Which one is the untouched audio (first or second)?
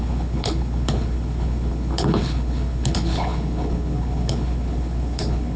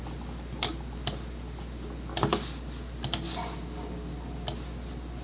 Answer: second